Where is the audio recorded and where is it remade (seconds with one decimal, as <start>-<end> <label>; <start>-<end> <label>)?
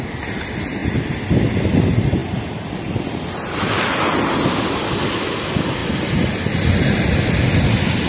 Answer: 0.0-8.1 recorded